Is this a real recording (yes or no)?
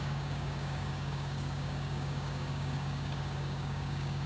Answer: no